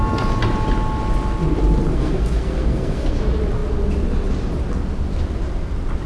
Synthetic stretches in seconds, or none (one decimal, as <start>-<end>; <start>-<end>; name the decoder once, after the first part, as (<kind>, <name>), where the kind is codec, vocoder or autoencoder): 1.9-3.2 (codec, SNAC)

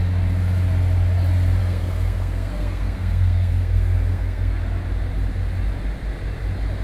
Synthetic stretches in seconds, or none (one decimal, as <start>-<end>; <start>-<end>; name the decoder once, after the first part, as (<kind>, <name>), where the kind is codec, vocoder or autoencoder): 1.6-4.6 (codec, SNAC)

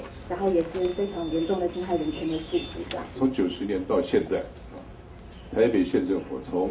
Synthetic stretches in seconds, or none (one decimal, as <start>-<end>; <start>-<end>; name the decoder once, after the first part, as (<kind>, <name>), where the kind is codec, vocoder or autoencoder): none

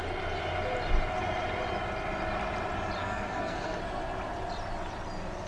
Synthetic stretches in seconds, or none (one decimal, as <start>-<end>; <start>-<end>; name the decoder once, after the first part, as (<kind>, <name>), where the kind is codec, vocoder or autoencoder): 3.0-3.8 (codec, SNAC)